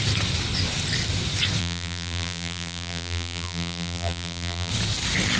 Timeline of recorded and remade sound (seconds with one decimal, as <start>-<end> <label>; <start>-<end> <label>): 0.0-1.6 recorded; 1.6-4.7 remade; 4.7-5.4 recorded